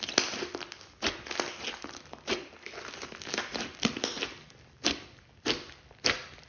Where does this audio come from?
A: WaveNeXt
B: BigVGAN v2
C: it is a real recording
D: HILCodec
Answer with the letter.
C